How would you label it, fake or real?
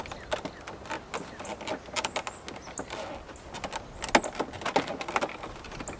real